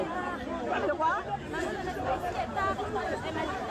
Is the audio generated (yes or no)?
no